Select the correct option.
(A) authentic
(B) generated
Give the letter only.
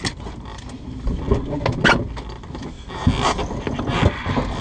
A